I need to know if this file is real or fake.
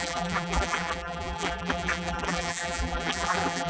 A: fake